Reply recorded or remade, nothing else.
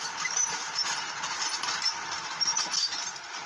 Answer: recorded